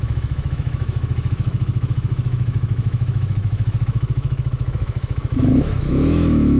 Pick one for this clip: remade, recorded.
remade